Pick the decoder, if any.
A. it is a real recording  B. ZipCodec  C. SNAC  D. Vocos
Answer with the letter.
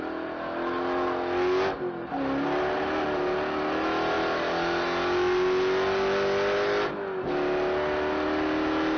A